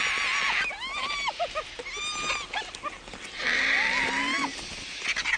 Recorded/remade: recorded